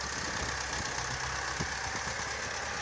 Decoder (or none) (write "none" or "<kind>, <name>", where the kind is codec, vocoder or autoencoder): none